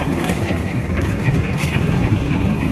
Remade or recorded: remade